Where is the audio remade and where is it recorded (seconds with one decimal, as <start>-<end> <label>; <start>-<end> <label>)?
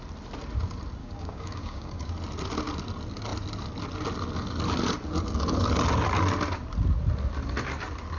0.0-1.0 recorded; 1.0-2.1 remade; 2.1-8.2 recorded